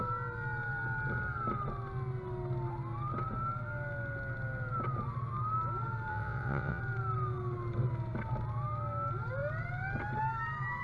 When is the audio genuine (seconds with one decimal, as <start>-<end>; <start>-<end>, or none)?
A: 0.0-6.1; 6.8-10.8